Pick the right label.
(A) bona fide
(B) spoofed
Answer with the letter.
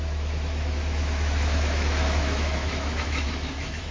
B